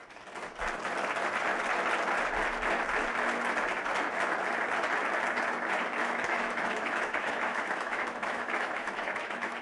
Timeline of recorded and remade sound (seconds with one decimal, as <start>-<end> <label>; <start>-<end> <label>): 0.0-6.0 recorded; 6.0-9.6 remade